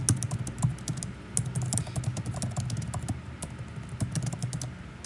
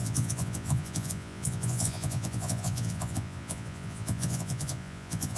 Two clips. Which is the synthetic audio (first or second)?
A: second